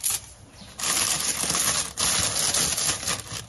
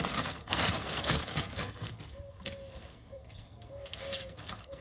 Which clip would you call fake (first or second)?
second